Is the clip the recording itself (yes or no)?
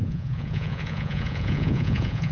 no